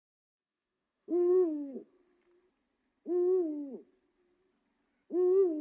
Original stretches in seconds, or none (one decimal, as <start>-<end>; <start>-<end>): 1.9-5.6

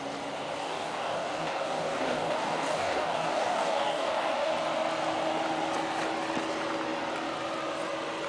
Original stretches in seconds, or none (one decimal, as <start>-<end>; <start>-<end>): 0.0-0.6; 4.5-8.3